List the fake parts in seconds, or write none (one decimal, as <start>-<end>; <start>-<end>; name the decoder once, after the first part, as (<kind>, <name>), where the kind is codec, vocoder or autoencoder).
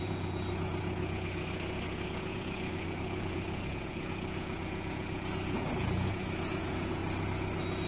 0.0-7.0 (vocoder, Vocos)